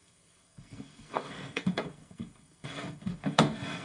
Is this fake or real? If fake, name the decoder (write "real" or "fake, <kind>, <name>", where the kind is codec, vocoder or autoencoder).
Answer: fake, codec, SNAC